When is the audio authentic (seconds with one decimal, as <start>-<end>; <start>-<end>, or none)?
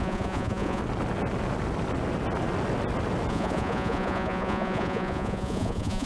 0.8-3.3